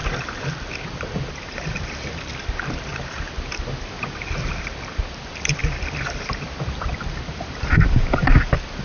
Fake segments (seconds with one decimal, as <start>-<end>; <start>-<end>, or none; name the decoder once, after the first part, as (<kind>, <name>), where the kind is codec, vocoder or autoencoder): 0.7-2.9 (vocoder, BigVGAN v2); 4.6-8.8